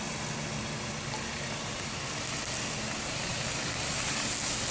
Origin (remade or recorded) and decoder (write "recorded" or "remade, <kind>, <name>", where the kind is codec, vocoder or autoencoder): recorded